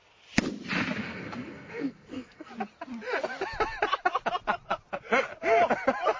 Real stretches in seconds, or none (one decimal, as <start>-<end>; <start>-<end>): 0.0-1.0; 2.5-6.2